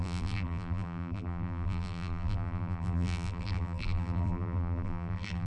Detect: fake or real fake